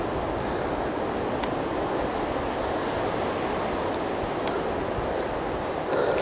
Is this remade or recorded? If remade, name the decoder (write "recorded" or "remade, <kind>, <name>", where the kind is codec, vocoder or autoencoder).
recorded